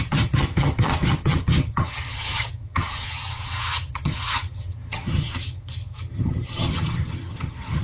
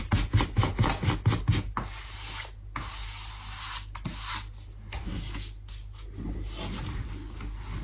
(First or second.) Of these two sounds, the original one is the second